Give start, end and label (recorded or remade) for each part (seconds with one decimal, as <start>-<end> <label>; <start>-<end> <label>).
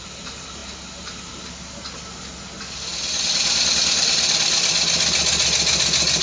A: 0.0-6.2 recorded